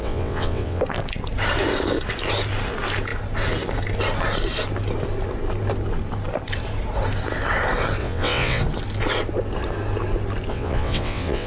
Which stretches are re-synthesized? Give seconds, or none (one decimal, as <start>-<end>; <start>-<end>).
0.0-0.8; 8.0-8.6; 10.5-11.5